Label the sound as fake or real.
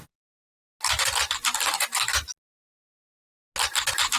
real